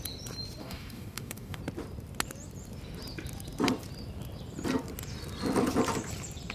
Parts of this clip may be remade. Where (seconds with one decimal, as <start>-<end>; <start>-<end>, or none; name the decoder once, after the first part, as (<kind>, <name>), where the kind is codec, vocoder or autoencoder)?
0.6-1.6 (codec, DAC)